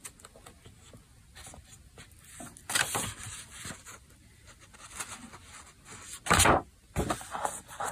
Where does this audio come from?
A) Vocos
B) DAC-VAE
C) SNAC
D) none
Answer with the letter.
D